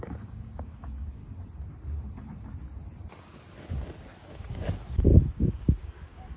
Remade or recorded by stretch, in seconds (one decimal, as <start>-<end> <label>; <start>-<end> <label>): 0.0-1.2 remade; 1.2-4.2 recorded; 4.2-6.4 remade